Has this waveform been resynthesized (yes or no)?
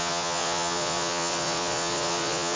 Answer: yes